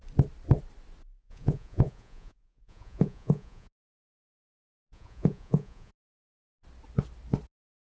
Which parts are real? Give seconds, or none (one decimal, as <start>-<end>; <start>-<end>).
0.0-1.2; 5.9-7.9